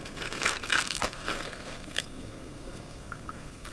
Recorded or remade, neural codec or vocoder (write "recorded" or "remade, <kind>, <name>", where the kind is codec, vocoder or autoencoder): remade, codec, SNAC